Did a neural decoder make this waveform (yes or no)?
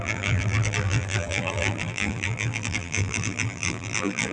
yes